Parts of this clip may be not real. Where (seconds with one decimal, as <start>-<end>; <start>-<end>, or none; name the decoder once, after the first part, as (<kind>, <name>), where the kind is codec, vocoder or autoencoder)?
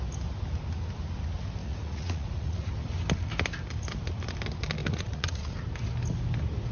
1.6-2.7 (vocoder, Vocos); 4.8-5.5